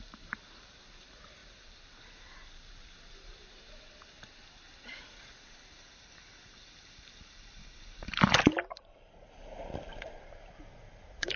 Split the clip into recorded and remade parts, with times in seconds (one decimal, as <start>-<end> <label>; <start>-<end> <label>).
0.0-7.6 remade; 7.6-9.9 recorded; 9.9-11.4 remade